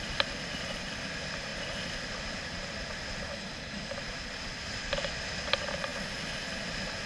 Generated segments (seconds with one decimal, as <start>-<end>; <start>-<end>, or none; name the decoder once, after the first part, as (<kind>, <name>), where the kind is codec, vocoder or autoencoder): none